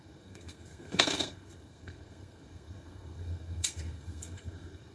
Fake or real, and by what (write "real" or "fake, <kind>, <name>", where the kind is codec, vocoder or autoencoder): fake, codec, SNAC